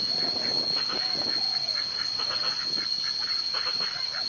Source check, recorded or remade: recorded